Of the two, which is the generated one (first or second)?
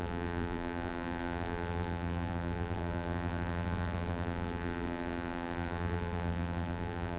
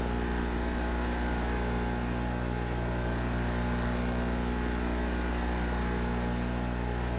first